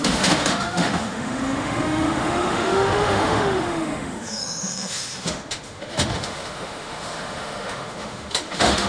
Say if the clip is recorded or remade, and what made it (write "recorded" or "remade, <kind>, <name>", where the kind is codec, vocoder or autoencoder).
remade, autoencoder, DAC-VAE